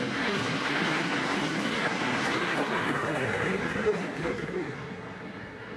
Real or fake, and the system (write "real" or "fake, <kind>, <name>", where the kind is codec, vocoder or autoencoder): fake, codec, SNAC